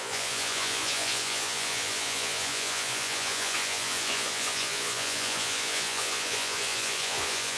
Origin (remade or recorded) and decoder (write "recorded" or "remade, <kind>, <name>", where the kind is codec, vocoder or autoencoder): remade, vocoder, Vocos